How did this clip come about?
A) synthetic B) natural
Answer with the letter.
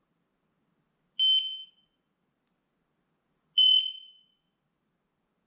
B